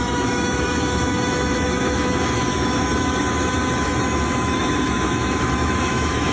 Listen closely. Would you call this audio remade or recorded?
remade